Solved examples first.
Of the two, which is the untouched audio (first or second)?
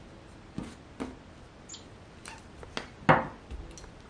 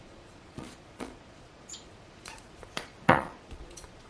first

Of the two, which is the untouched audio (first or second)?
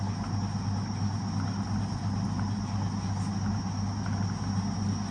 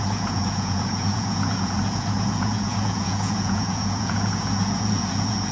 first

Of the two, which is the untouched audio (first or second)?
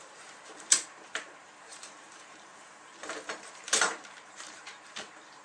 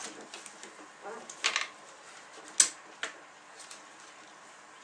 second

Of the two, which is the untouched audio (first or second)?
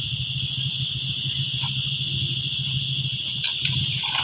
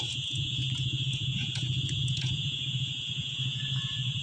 first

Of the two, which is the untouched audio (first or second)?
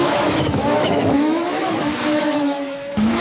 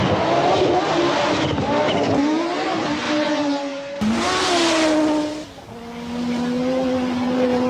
second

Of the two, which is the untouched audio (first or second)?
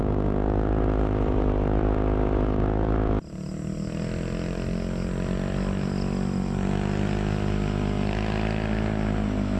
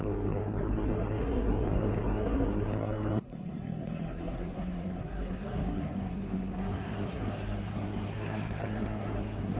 first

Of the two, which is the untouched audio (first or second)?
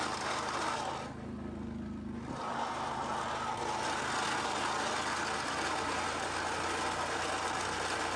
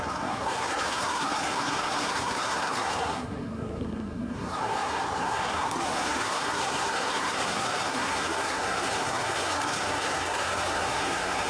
first